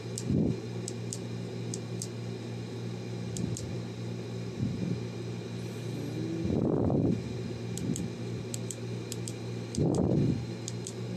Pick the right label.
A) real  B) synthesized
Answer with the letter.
A